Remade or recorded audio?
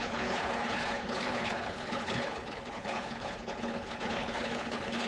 remade